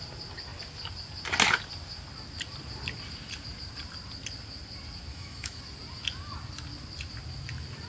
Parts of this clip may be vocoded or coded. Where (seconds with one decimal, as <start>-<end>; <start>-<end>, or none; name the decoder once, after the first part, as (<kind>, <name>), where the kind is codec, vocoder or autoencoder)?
5.1-5.6 (autoencoder, DAC-VAE)